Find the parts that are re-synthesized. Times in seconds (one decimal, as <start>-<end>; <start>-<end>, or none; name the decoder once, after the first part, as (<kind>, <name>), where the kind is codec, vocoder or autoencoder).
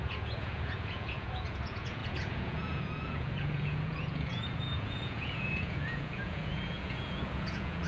0.0-7.9 (vocoder, Vocos)